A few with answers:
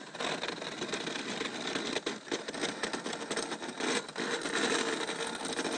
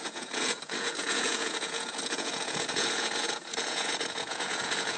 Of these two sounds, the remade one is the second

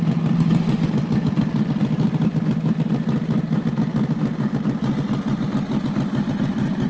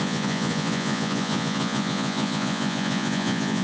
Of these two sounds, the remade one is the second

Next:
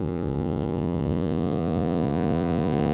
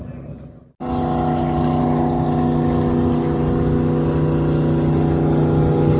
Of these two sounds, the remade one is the first